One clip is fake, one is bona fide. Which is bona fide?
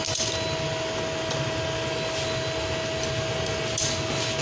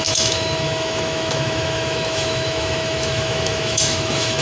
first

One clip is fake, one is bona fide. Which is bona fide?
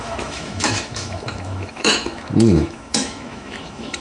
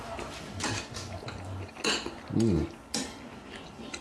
second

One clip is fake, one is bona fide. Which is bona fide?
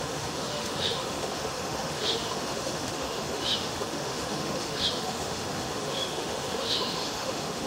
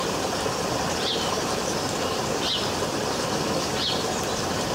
second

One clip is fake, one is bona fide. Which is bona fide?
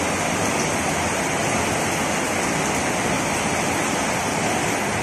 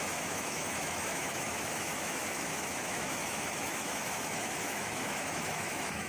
first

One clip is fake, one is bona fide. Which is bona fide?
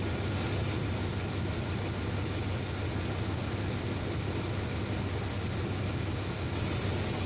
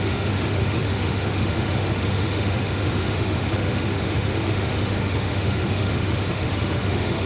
first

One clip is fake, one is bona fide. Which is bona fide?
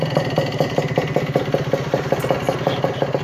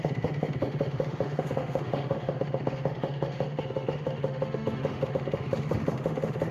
first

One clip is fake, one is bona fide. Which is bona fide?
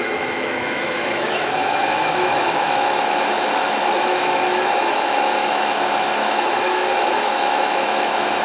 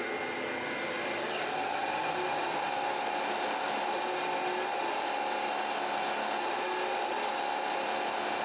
second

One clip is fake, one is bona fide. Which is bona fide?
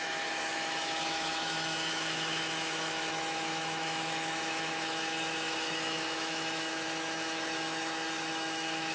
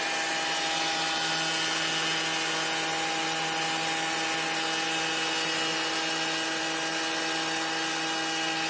second